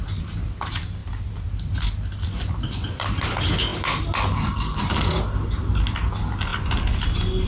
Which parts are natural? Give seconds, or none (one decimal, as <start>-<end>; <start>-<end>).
0.0-7.5